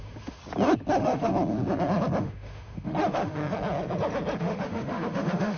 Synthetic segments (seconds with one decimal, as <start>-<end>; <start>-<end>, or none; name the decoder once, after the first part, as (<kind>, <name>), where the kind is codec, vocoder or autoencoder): 0.0-0.4 (autoencoder, DAC-VAE); 0.9-1.3; 2.2-3.4; 4.4-5.6